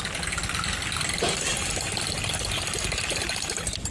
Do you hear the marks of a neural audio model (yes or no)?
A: no